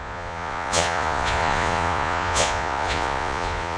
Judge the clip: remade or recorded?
remade